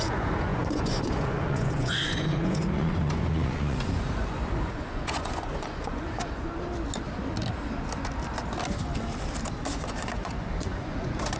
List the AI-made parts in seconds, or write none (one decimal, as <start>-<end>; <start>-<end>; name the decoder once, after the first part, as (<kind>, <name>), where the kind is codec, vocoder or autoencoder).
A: 0.0-6.5 (vocoder, Vocos); 9.7-11.4

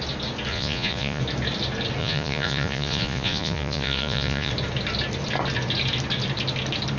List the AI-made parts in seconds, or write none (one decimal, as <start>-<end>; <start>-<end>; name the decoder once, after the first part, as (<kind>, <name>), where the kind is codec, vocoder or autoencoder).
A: 0.5-1.2 (vocoder, Vocos); 2.0-4.5

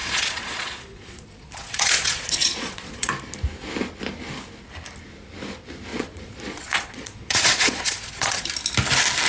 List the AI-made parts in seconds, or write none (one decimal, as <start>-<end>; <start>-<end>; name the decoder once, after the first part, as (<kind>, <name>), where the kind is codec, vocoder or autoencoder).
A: 0.0-3.1 (vocoder, Vocos); 5.9-8.5

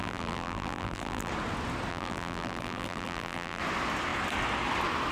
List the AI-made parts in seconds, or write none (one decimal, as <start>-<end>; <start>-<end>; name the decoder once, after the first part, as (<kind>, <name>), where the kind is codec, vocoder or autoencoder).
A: 0.0-1.3 (vocoder, BigVGAN v2); 1.9-3.6

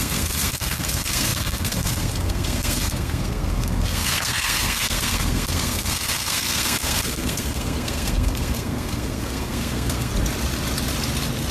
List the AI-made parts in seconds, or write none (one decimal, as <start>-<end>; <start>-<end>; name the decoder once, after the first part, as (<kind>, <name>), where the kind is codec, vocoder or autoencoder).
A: 0.0-10.1 (codec, SNAC)

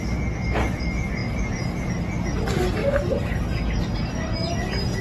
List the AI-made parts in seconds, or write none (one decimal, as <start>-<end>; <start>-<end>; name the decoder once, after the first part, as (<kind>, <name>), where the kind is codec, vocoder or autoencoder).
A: 1.2-1.9 (vocoder, BigVGAN v2); 2.8-3.3

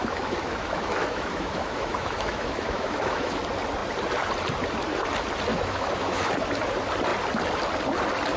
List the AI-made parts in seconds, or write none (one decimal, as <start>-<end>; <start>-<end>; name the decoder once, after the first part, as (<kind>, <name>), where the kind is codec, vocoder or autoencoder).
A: 0.0-3.4 (autoencoder, DAC-VAE); 5.5-6.3